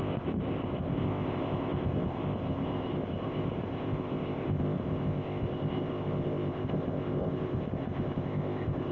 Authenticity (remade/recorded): remade